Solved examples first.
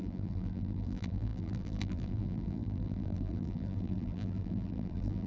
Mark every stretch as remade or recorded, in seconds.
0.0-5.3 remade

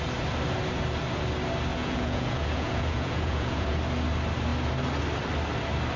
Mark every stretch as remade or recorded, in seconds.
0.0-1.7 recorded; 1.7-3.8 remade; 3.8-6.0 recorded

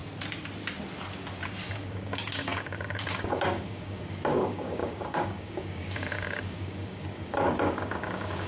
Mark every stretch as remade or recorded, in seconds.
0.0-1.7 recorded; 1.7-8.5 remade

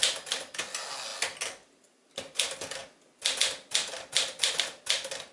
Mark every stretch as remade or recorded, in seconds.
0.0-5.3 recorded

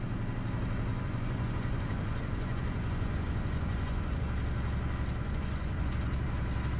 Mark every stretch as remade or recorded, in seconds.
0.0-0.9 recorded; 0.9-4.2 remade; 4.2-5.2 recorded; 5.2-5.9 remade; 5.9-6.8 recorded

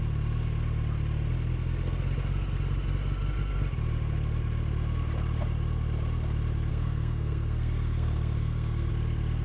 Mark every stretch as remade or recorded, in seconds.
0.0-6.7 recorded; 6.7-8.9 remade; 8.9-9.4 recorded

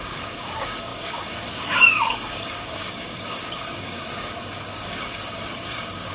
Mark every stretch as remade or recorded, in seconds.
0.0-6.1 remade

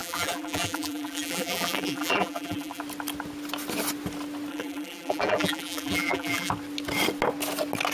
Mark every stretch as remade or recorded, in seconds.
0.0-2.8 remade; 2.8-4.5 recorded; 4.5-6.5 remade; 6.5-7.9 recorded